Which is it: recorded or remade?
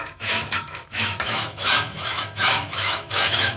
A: remade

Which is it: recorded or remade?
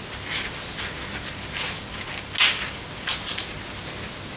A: recorded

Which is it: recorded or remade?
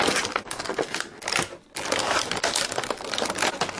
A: recorded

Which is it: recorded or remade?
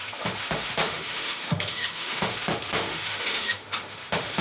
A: remade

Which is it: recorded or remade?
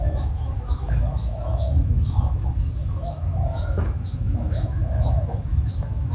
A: remade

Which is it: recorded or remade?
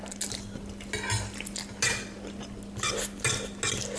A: recorded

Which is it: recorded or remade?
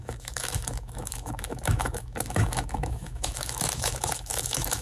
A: remade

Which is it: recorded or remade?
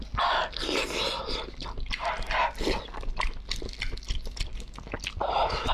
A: recorded